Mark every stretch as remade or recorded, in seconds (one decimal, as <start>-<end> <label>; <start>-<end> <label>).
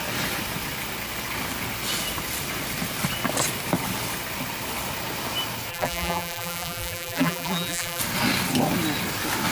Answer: 0.0-5.7 recorded; 5.7-8.0 remade; 8.0-9.5 recorded